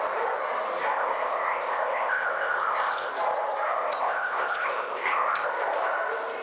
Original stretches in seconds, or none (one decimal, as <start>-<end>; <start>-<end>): 0.0-0.9; 3.1-3.7; 5.5-6.4